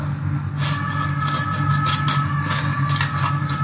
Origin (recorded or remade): recorded